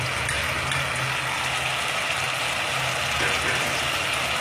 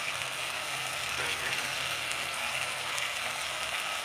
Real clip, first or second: first